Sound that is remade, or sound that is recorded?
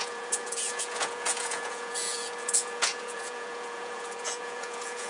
remade